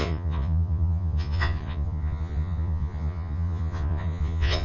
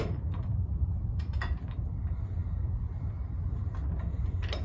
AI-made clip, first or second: first